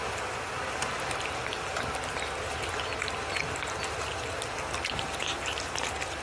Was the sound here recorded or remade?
recorded